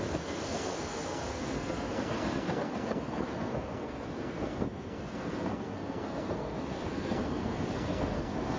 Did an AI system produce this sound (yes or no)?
yes